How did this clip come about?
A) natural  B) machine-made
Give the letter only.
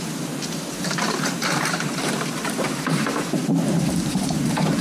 B